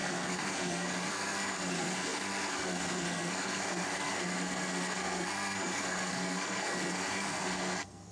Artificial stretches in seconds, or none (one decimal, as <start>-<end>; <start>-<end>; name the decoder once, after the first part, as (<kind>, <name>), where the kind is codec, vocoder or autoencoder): 0.0-8.1 (codec, SNAC)